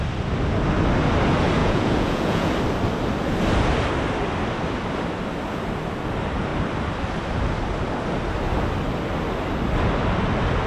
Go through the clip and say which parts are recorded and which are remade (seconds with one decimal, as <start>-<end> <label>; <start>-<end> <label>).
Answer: 0.0-1.6 recorded; 1.6-2.5 remade; 2.5-10.7 recorded